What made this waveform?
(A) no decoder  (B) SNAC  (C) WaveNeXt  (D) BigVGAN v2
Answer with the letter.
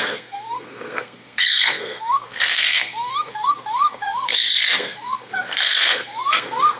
B